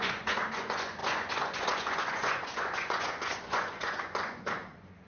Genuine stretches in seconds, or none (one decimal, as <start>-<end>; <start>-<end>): none